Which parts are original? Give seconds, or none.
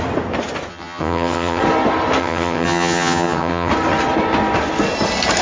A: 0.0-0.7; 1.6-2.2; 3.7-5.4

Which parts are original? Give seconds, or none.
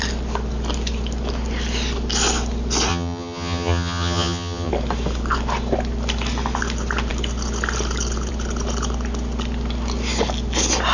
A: 0.0-2.9; 4.7-10.9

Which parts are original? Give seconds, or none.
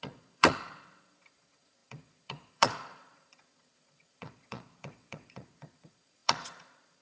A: none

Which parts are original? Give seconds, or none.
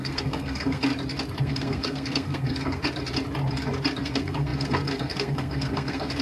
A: 0.9-1.4; 2.8-4.0